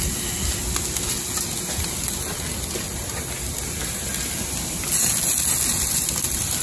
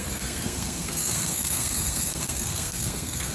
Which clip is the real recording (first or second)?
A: first